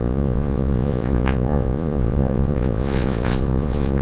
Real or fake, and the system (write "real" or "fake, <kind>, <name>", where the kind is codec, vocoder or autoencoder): fake, vocoder, Vocos